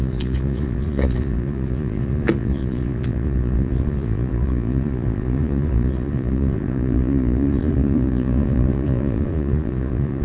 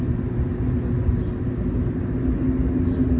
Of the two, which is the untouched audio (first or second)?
second